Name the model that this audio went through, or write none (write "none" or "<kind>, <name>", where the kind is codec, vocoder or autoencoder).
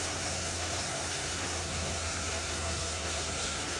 codec, SNAC